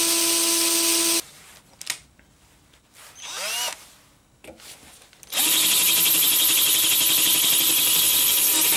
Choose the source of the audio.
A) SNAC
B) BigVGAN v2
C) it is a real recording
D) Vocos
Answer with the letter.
C